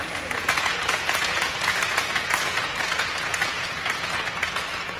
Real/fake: fake